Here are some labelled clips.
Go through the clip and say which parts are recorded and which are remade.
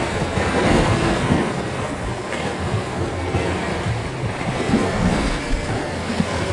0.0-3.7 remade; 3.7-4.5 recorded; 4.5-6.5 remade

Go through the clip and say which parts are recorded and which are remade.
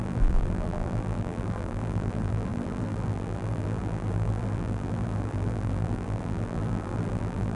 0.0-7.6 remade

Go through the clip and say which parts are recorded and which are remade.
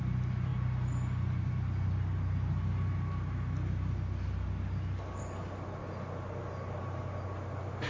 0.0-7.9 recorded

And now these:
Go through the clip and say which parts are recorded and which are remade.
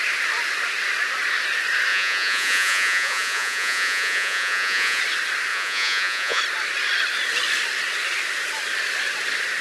0.0-1.9 recorded; 1.9-5.0 remade; 5.0-5.5 recorded; 5.5-6.4 remade; 6.4-9.6 recorded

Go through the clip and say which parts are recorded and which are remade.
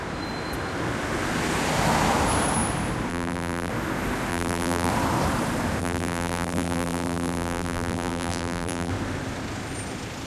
0.0-3.1 recorded; 3.1-3.7 remade; 3.7-4.3 recorded; 4.3-4.9 remade; 4.9-5.8 recorded; 5.8-8.9 remade; 8.9-10.3 recorded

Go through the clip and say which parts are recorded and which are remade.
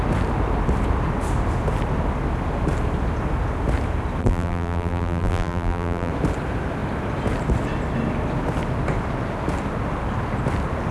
0.0-4.2 recorded; 4.2-6.1 remade; 6.1-10.9 recorded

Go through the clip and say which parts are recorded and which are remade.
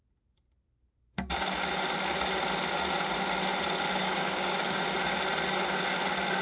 0.0-4.0 recorded; 4.0-4.8 remade; 4.8-6.4 recorded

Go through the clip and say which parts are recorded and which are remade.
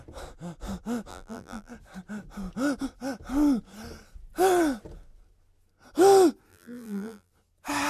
0.0-1.1 recorded; 1.1-1.7 remade; 1.7-6.5 recorded; 6.5-7.3 remade; 7.3-7.9 recorded